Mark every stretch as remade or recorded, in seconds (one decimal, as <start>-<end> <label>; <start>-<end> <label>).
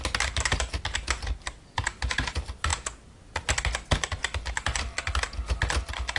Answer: 0.0-6.2 recorded